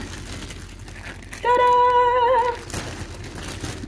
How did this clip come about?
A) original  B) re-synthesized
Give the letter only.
A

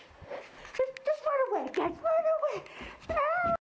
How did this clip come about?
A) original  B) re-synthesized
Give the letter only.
A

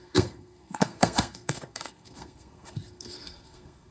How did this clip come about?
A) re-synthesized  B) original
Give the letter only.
A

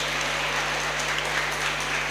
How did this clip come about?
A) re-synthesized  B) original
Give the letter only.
B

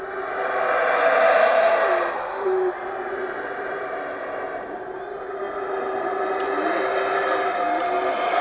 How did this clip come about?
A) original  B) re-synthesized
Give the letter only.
A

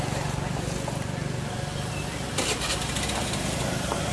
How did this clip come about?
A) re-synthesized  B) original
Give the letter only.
B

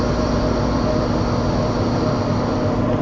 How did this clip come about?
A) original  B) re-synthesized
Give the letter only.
A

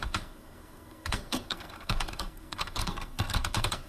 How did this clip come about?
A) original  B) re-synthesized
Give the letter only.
B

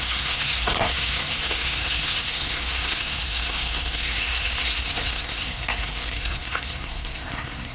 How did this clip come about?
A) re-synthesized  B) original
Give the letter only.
A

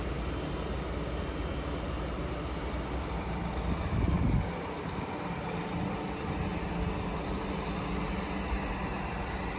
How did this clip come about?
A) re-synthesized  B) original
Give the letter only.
B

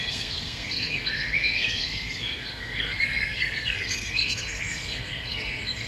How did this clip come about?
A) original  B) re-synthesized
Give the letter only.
B